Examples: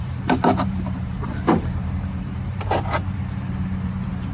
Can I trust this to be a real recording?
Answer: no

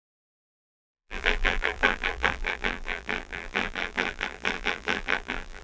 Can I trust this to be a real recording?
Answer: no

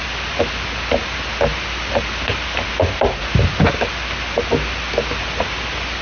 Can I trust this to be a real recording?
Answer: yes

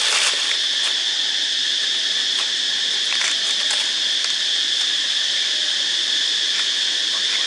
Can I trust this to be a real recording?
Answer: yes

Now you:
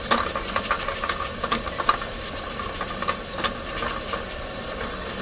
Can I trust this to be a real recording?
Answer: no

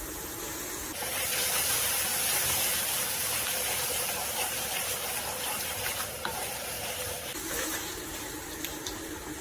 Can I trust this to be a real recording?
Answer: no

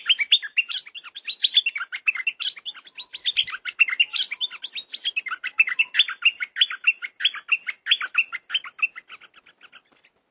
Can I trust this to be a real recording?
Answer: yes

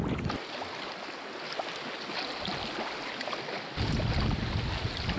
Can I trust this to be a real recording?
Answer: yes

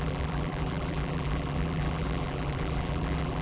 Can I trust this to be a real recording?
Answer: no